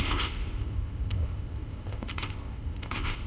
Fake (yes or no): yes